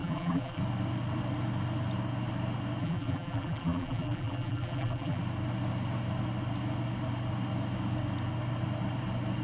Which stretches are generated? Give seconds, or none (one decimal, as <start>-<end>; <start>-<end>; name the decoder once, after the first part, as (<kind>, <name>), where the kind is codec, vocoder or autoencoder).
0.0-0.6 (vocoder, BigVGAN v2); 2.8-5.2